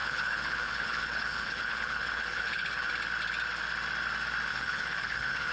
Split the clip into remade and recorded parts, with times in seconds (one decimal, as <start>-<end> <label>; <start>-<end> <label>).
0.0-2.9 remade; 2.9-4.5 recorded; 4.5-5.5 remade